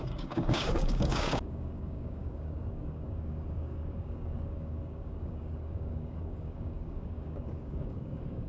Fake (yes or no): yes